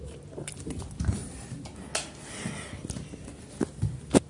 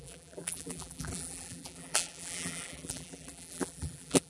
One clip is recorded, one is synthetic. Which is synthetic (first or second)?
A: second